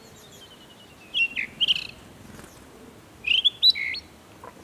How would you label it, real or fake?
real